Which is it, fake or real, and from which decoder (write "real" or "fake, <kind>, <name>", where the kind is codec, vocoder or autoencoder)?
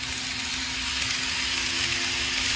real